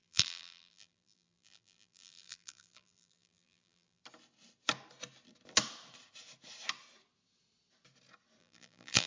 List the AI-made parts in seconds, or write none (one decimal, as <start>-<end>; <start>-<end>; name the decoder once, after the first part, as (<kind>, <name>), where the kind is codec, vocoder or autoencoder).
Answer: 0.0-4.0 (vocoder, BigVGAN v2); 8.4-9.1